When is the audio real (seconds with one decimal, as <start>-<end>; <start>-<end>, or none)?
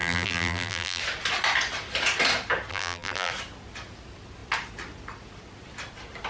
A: 1.0-2.7; 3.3-6.3